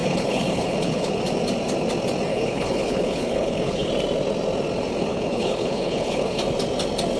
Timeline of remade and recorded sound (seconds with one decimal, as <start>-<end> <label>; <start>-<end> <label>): 0.0-1.2 remade; 1.2-2.3 recorded; 2.3-3.9 remade; 3.9-5.1 recorded; 5.1-6.4 remade; 6.4-7.2 recorded